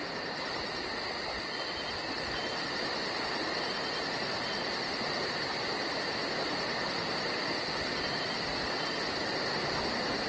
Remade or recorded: recorded